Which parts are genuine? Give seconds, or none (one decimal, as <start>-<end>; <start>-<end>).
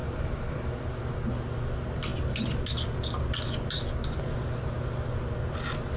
0.0-6.0